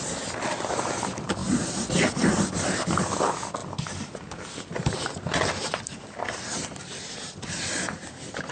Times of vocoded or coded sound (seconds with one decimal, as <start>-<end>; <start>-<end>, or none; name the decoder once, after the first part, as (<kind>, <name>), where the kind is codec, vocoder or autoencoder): none